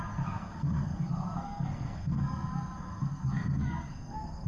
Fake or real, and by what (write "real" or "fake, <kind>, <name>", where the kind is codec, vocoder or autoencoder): fake, codec, SNAC